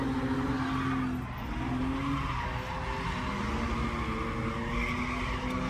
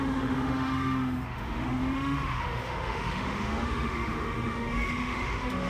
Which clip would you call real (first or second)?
first